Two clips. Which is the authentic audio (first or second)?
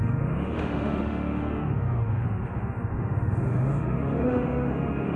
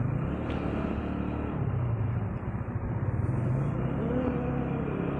second